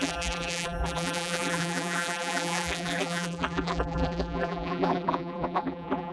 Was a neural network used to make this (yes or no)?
yes